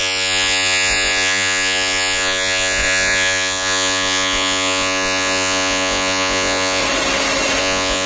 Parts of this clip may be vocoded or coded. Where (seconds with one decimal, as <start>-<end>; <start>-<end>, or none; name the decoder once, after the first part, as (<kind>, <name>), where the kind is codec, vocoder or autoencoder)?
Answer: 0.0-6.8 (vocoder, Vocos); 7.6-8.1